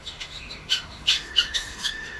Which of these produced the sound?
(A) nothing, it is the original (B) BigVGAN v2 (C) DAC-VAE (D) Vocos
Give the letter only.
C